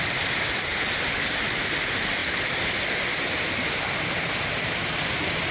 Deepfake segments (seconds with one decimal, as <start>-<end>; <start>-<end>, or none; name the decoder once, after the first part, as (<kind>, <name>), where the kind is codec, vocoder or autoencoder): none